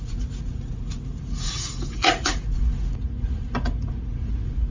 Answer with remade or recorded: remade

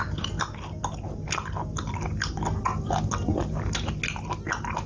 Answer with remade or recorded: recorded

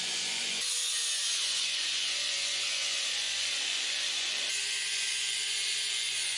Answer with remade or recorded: remade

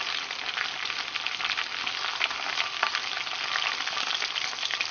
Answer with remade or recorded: recorded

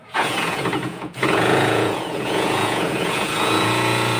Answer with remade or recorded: remade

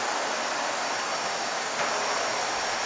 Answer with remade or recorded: recorded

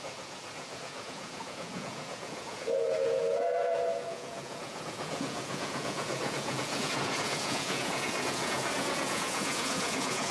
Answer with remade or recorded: remade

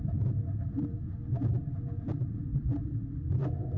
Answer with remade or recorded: recorded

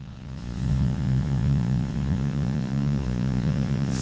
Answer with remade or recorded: remade